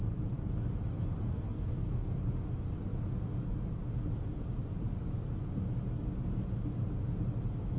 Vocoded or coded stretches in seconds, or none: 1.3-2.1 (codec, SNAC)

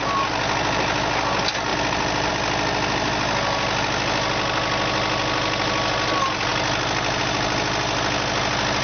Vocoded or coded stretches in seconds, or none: none

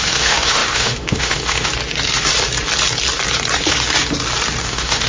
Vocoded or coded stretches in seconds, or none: 0.0-1.7 (autoencoder, DAC-VAE); 4.6-5.1